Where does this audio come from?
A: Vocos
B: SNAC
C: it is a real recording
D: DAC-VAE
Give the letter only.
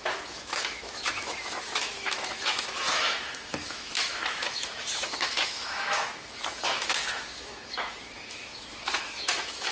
D